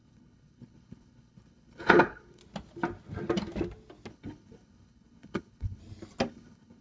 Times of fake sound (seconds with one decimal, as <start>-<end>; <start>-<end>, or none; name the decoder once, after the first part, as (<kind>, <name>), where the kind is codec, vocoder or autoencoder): 0.0-2.4 (codec, HILCodec); 4.1-5.8; 6.3-6.8